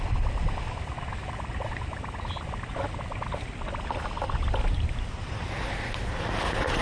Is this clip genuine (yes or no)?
no